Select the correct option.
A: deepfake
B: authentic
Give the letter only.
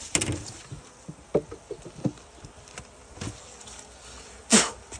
B